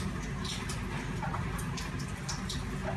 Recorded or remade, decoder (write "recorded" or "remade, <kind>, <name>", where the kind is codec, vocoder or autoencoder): recorded